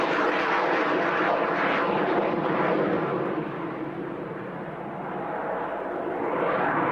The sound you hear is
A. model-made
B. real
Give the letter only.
B